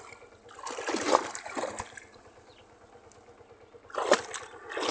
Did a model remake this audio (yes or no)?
no